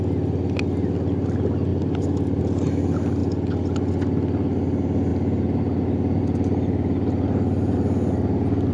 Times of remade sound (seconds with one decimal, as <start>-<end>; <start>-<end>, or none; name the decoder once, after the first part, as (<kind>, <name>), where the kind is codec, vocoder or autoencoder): 1.7-2.4 (vocoder, BigVGAN v2)